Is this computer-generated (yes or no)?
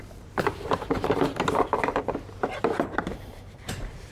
yes